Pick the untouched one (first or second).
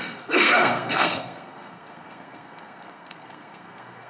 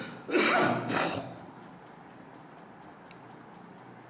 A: second